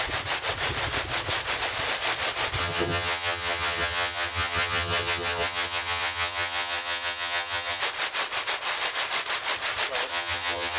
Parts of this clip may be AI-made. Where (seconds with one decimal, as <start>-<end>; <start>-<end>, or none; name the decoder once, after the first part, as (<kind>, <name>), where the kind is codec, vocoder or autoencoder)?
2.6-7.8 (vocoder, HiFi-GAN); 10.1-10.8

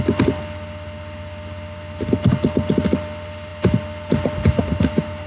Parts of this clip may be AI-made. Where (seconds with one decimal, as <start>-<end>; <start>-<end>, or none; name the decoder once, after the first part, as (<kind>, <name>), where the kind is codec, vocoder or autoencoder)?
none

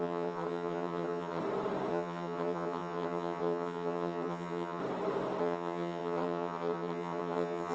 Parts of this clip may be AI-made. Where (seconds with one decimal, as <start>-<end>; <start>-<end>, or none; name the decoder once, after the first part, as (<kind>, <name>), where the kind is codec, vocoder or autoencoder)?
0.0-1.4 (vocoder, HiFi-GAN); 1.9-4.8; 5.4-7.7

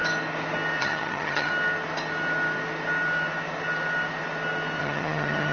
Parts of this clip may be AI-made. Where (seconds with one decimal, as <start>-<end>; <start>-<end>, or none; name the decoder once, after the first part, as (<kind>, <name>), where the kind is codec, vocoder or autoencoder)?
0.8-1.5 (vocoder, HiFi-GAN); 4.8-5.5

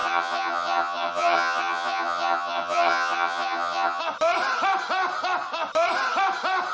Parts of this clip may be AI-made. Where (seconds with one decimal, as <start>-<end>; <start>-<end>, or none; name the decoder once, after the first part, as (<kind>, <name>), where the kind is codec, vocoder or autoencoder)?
0.0-4.0 (vocoder, HiFi-GAN)

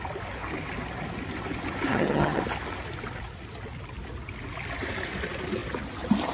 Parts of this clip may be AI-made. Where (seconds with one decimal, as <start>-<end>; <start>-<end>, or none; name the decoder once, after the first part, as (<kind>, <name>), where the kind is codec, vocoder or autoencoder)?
1.9-2.4 (vocoder, HiFi-GAN)

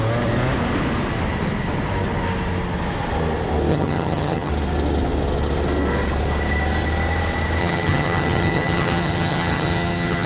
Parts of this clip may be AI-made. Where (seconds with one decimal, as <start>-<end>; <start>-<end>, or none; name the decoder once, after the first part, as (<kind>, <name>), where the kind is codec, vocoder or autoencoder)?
3.7-4.5 (vocoder, HiFi-GAN); 7.6-10.3